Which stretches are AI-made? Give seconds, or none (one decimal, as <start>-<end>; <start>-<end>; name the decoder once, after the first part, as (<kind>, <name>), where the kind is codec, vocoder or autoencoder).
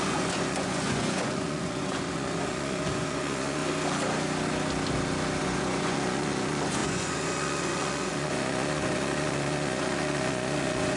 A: 0.0-3.6 (vocoder, Vocos); 5.4-11.0